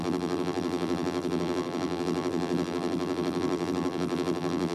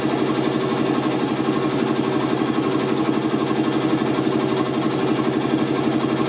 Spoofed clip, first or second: first